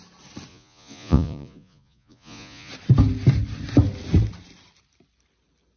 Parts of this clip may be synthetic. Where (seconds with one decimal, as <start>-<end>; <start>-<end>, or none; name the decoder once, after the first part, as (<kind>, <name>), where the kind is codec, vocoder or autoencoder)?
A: 0.5-2.7 (vocoder, Vocos)